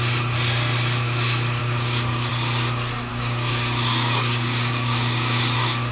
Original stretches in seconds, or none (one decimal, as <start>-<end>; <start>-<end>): 0.0-1.6; 2.3-3.1